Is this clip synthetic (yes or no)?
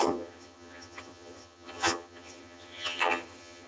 yes